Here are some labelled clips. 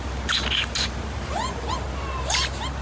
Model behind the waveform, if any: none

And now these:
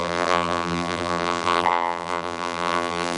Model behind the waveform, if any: vocoder, BigVGAN v2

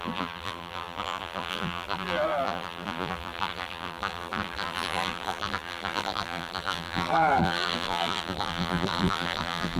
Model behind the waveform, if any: vocoder, BigVGAN v2